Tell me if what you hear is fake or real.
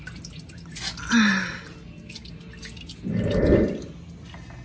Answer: real